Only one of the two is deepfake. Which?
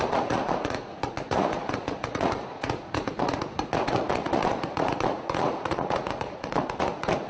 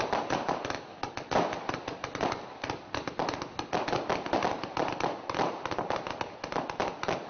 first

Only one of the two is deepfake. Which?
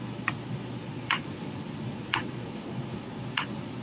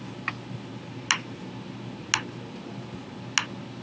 first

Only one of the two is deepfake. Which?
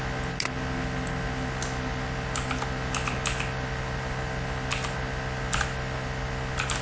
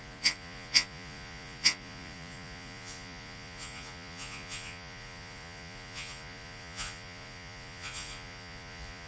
second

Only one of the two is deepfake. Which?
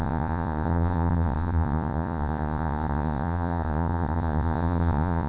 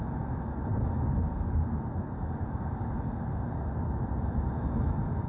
first